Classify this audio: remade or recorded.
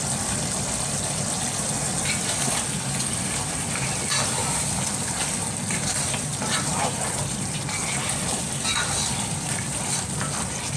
recorded